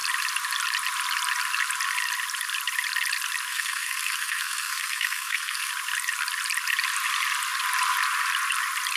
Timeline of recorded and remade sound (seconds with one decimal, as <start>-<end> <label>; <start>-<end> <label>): 0.0-3.5 recorded; 3.5-5.7 remade; 5.7-9.0 recorded